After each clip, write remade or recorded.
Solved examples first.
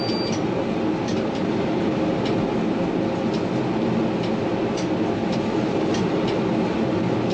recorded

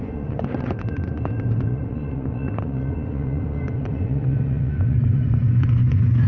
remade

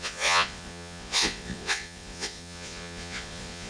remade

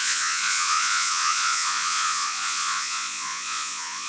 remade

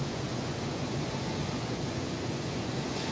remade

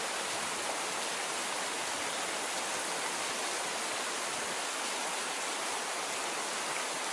recorded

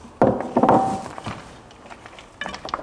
recorded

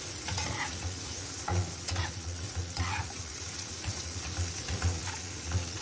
remade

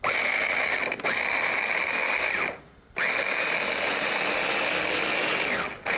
recorded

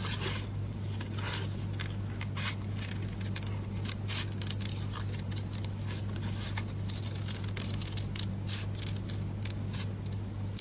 recorded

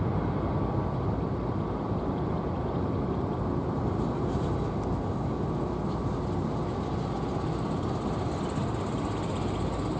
recorded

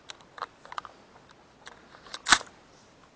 recorded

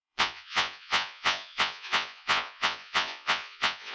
remade